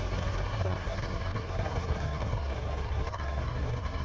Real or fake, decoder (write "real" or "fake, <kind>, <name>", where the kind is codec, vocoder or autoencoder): fake, codec, SNAC